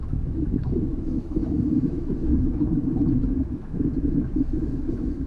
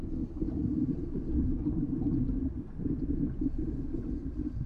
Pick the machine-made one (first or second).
first